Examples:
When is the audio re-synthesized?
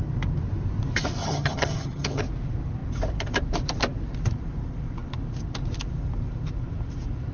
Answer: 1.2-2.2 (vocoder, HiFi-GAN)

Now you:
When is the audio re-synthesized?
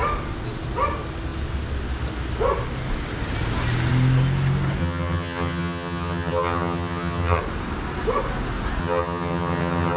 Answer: 4.8-7.4 (vocoder, HiFi-GAN); 8.8-10.0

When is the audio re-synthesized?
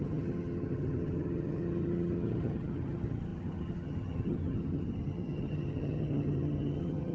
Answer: 0.0-7.1 (vocoder, HiFi-GAN)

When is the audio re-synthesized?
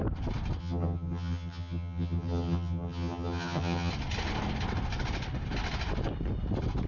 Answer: 0.6-3.9 (vocoder, HiFi-GAN)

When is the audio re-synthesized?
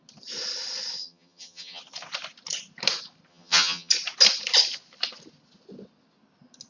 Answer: 1.0-1.8 (vocoder, HiFi-GAN); 3.3-3.9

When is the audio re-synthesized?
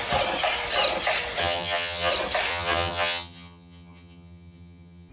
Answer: 1.4-2.1 (vocoder, HiFi-GAN); 2.5-5.1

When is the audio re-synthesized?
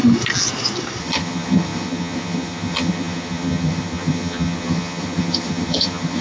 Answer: 1.0-6.2 (vocoder, HiFi-GAN)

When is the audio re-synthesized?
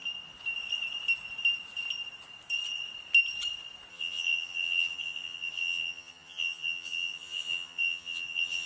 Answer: 3.9-8.7 (vocoder, HiFi-GAN)